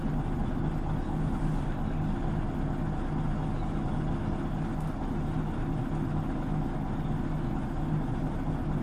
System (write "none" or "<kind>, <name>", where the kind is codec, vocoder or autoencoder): none